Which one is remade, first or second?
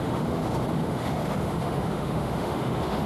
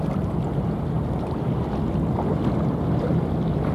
first